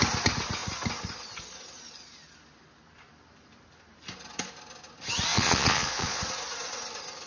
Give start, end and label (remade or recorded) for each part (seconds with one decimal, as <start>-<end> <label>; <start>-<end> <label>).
0.0-5.3 recorded; 5.3-6.2 remade; 6.2-7.3 recorded